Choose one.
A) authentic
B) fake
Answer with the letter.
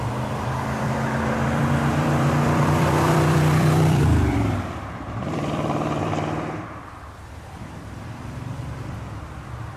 B